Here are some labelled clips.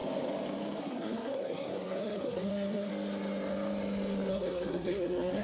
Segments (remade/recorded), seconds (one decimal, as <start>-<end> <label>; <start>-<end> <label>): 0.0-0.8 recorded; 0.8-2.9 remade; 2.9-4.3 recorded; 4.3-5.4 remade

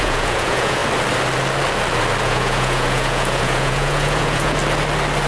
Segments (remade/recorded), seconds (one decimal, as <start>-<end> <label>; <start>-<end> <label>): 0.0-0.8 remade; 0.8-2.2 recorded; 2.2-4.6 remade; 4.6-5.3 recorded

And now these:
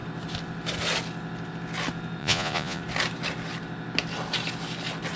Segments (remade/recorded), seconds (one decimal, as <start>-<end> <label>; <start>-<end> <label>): 0.0-2.2 recorded; 2.2-2.8 remade; 2.8-5.2 recorded

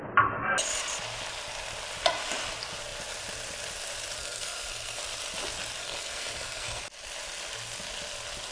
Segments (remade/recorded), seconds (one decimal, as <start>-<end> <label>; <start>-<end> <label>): 0.0-4.2 recorded; 4.2-5.0 remade; 5.0-5.8 recorded; 5.8-6.8 remade; 6.8-8.5 recorded

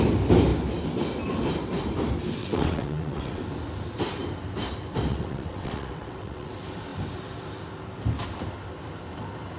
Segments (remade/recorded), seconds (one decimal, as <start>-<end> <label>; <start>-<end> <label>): 0.0-2.4 recorded; 2.4-3.4 remade; 3.4-5.1 recorded; 5.1-6.5 remade; 6.5-9.6 recorded

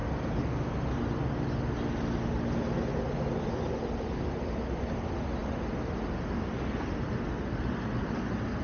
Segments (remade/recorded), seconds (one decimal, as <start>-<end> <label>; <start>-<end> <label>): 0.0-8.6 recorded

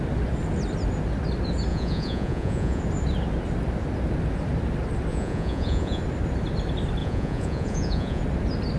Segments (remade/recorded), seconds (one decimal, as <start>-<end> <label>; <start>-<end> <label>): 0.0-1.7 recorded; 1.7-2.8 remade; 2.8-5.1 recorded; 5.1-6.0 remade; 6.0-7.0 recorded; 7.0-8.2 remade; 8.2-8.8 recorded